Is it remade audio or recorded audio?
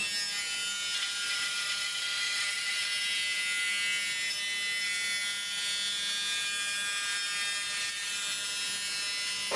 recorded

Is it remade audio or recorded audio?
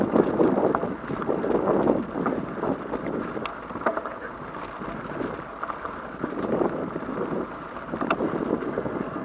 recorded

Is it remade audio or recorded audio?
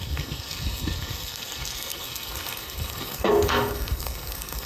remade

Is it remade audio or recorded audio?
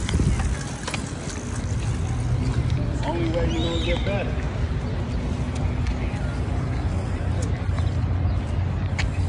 recorded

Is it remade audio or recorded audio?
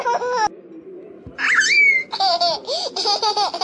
recorded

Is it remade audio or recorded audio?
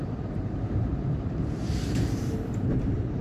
remade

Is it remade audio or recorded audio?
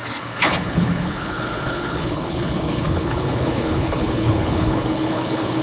remade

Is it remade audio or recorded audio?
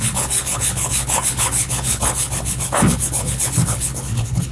remade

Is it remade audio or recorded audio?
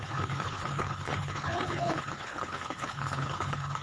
remade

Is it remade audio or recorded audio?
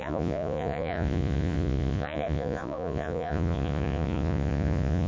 remade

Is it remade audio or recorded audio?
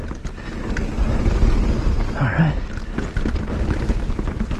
recorded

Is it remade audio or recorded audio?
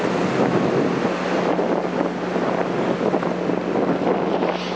recorded